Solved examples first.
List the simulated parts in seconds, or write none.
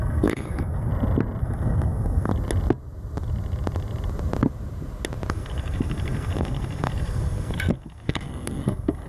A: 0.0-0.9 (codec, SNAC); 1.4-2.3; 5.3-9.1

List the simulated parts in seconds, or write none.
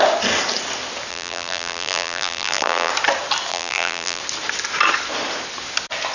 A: 1.1-2.9 (vocoder, BigVGAN v2); 3.5-4.2